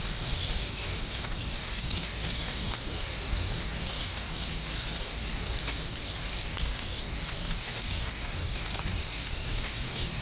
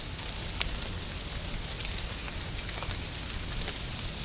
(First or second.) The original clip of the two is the second